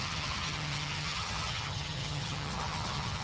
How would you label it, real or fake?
fake